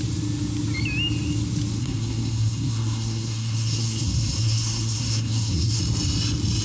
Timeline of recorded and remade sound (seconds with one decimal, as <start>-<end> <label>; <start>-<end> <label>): 0.0-1.8 recorded; 1.8-5.8 remade; 5.8-6.6 recorded